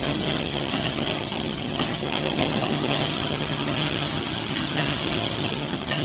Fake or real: fake